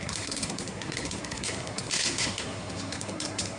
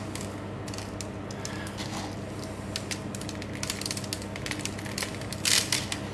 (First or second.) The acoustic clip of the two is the second